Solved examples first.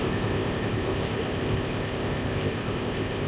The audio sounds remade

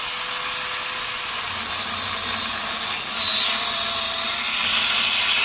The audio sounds recorded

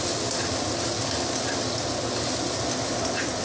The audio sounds recorded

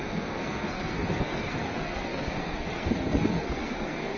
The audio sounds remade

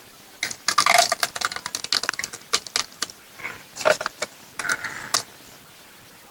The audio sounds recorded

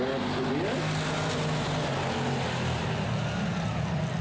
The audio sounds recorded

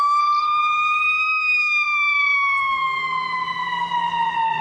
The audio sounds remade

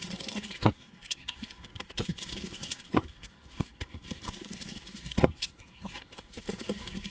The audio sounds remade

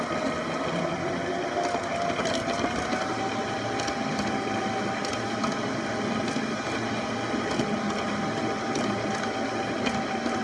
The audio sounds recorded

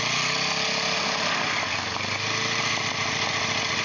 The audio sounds recorded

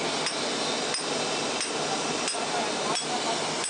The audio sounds recorded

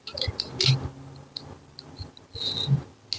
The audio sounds recorded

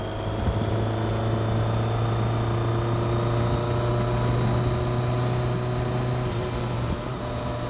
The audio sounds recorded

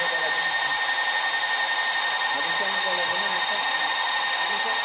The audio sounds recorded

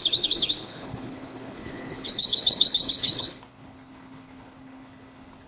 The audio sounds remade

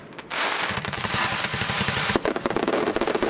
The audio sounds remade